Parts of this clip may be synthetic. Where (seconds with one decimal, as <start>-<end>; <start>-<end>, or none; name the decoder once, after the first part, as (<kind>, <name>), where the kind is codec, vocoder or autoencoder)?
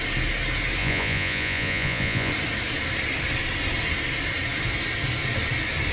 0.8-2.3 (vocoder, Vocos)